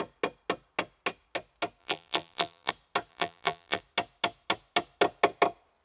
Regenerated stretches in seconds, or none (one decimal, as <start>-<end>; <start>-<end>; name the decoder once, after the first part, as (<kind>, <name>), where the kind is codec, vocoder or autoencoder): 1.8-2.7 (vocoder, BigVGAN v2); 3.1-3.8